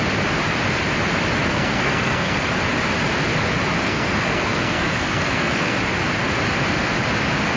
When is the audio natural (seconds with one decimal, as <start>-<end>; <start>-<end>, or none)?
0.0-1.5; 2.5-3.8; 5.8-7.6